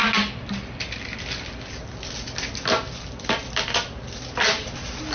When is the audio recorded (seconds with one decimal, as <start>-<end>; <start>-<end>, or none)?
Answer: 0.0-5.1